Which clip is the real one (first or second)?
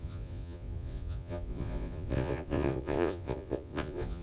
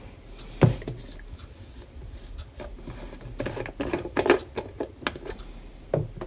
second